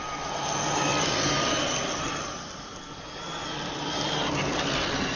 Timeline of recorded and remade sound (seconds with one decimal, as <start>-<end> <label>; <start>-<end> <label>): 0.0-5.2 recorded